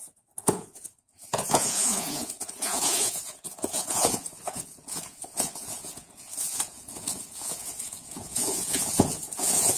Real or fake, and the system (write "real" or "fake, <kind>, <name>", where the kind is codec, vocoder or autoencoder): fake, vocoder, Vocos